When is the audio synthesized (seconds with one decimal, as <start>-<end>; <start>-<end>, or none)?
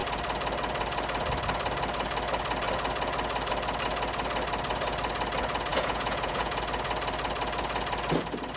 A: 5.7-6.6